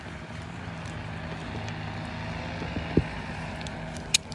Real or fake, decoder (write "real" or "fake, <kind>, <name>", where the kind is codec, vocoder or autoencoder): real